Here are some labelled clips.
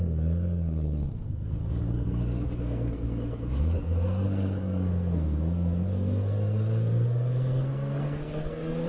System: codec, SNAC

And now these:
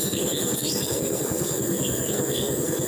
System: codec, SNAC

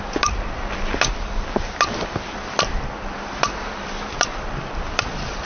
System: none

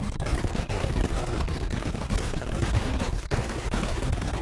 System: codec, SNAC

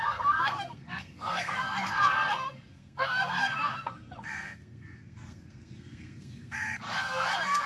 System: codec, SNAC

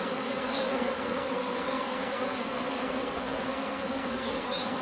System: codec, SNAC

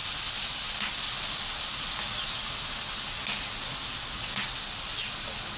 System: none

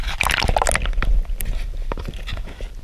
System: none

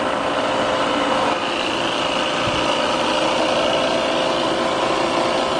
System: none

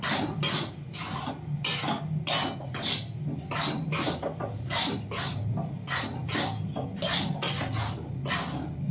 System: none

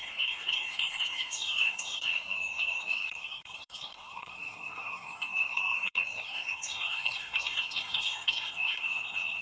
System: codec, SNAC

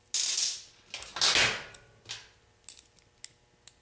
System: none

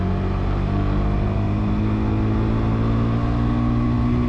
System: none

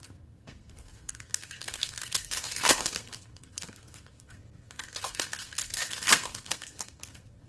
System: codec, SNAC